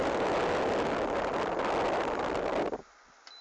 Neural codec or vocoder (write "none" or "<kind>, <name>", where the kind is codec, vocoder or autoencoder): none